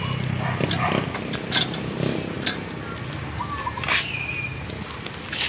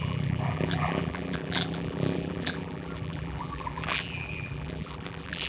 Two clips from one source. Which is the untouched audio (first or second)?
first